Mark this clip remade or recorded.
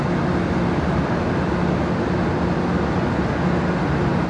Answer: recorded